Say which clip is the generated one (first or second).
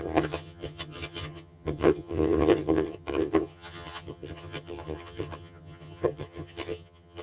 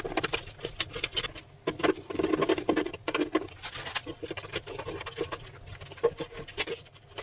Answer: first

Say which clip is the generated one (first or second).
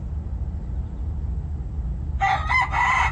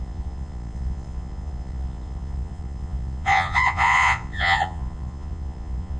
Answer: second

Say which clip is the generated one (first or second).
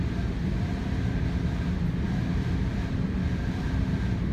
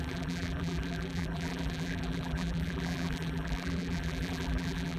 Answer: second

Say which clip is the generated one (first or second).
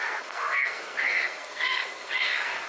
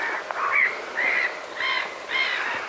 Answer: first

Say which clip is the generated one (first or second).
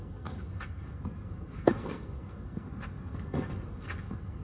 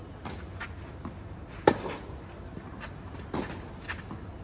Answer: first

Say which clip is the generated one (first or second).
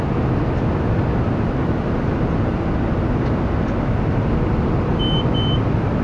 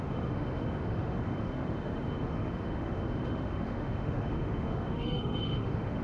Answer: second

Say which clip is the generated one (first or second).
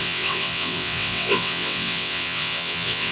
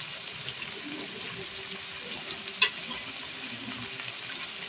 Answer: first